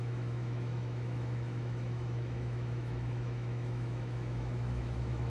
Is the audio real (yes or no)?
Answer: no